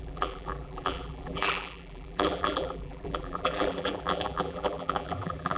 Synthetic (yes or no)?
yes